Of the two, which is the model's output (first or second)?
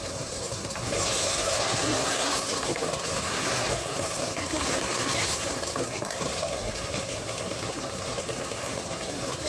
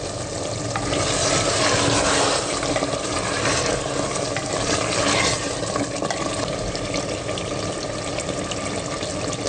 first